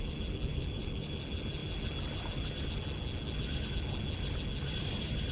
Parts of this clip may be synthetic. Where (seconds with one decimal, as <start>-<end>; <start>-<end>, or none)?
0.5-1.2